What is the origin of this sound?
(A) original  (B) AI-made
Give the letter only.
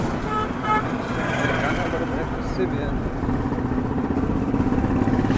A